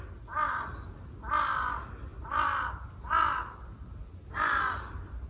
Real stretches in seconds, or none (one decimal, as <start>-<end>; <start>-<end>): 0.0-5.3